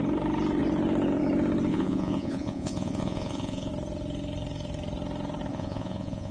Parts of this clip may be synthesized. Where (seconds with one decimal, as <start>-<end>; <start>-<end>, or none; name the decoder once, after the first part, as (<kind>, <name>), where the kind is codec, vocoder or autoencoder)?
1.7-3.7 (vocoder, Vocos); 5.5-6.3